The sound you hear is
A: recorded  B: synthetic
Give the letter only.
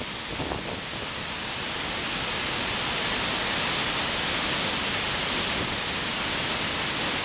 A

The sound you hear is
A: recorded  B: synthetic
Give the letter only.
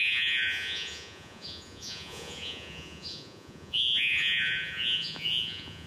B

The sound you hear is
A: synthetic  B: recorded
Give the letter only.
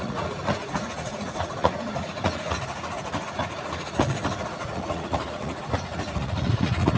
A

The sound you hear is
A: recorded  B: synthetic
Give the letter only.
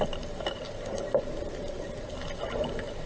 A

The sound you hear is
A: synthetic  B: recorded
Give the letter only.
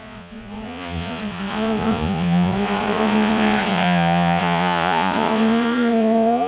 A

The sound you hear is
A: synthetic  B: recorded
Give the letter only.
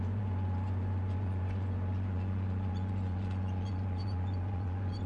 A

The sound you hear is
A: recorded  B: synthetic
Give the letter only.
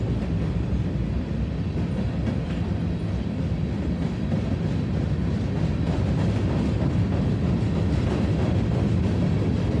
A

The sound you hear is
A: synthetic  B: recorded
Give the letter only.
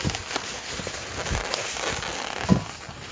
B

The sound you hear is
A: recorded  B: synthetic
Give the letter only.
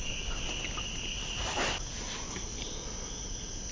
A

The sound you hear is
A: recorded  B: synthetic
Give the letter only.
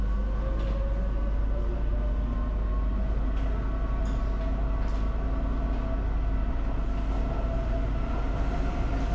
A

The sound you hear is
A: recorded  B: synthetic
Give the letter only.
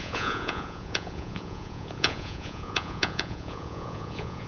B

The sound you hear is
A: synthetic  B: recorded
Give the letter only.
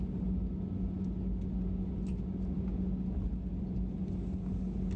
B